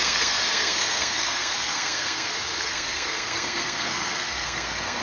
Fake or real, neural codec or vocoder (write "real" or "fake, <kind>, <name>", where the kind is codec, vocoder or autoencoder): fake, codec, SNAC